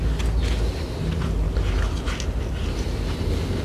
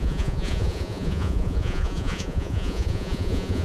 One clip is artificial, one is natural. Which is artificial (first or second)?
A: second